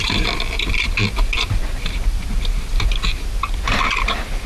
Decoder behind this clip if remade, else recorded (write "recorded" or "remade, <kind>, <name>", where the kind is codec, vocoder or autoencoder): recorded